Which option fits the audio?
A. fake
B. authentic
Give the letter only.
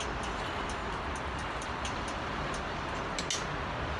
B